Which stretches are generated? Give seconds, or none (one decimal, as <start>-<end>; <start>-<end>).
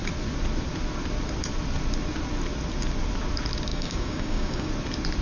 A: 3.7-4.7